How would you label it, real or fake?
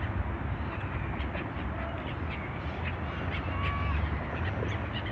real